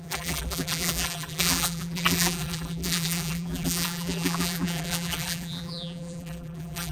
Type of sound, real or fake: fake